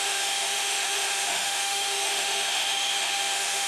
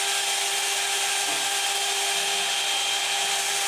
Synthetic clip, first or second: first